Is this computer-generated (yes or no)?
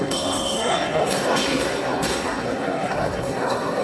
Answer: yes